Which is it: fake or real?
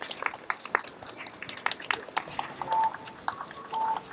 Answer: real